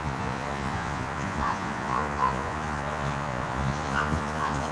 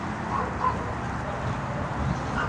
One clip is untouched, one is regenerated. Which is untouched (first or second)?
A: second